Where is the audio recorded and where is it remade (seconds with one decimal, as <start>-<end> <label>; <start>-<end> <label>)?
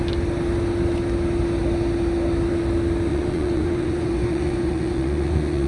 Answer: 0.0-3.1 recorded; 3.1-5.7 remade